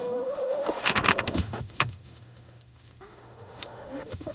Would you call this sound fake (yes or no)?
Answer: yes